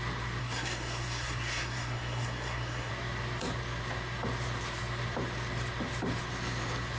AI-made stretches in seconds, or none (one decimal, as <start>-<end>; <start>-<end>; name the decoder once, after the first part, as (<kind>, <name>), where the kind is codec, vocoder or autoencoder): 0.4-2.9 (codec, SNAC)